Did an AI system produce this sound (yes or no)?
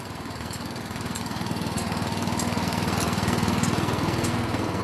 yes